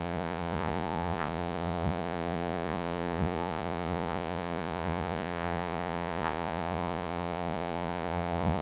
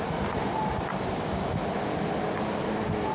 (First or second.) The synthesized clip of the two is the first